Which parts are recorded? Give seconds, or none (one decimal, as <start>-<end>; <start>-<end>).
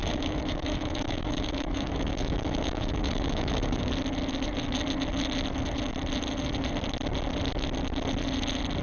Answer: 3.9-8.8